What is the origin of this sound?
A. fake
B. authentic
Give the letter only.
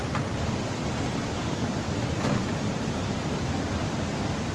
A